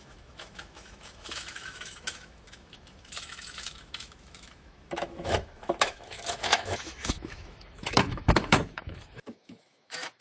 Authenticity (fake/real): fake